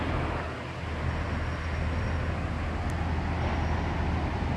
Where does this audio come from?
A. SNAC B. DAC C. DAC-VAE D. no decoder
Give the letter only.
D